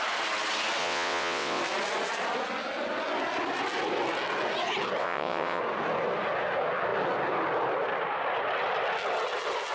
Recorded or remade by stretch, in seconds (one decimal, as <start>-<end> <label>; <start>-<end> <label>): 0.0-0.8 recorded; 0.8-1.6 remade; 1.6-5.0 recorded; 5.0-5.6 remade; 5.6-9.7 recorded